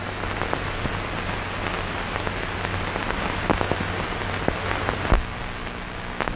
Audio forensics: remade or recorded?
recorded